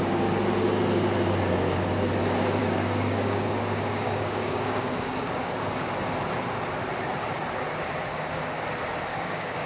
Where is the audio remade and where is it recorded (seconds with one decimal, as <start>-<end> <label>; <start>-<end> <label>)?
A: 0.0-2.6 recorded; 2.6-5.8 remade; 5.8-9.1 recorded; 9.1-9.7 remade